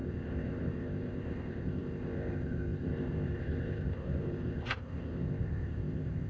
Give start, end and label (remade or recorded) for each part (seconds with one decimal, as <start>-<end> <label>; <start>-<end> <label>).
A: 0.0-6.3 remade